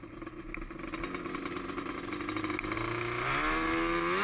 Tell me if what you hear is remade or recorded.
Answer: recorded